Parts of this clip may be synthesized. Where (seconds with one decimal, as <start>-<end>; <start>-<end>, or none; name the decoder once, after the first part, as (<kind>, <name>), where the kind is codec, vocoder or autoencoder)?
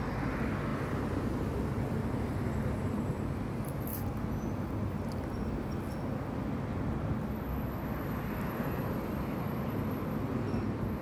none